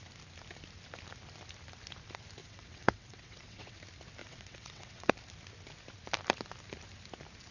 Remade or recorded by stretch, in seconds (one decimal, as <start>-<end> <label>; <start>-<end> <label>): 0.0-2.4 recorded; 2.4-3.8 remade; 3.8-4.2 recorded; 4.2-5.1 remade; 5.1-7.5 recorded